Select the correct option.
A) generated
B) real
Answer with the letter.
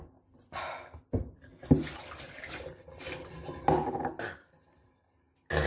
B